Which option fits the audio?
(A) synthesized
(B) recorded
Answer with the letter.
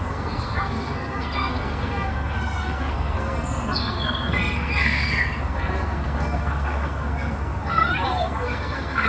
A